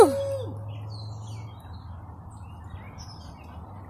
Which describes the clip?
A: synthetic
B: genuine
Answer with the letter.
B